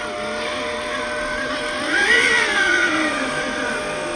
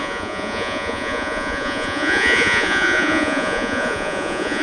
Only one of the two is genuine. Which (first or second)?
first